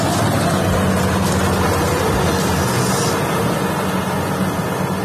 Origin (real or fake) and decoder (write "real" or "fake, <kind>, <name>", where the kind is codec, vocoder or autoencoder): real